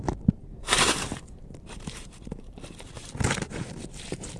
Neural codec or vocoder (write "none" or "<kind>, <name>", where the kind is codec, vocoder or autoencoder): vocoder, BigVGAN v2